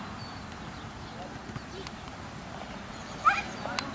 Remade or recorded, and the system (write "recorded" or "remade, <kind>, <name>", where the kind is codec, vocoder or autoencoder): recorded